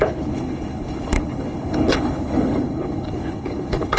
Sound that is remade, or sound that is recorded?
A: remade